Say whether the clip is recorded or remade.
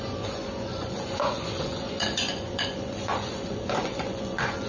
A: remade